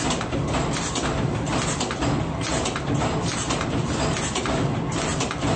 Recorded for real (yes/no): yes